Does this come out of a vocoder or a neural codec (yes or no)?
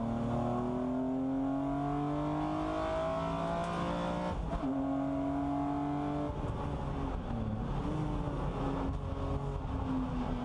no